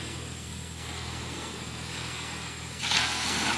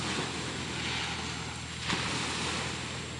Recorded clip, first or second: second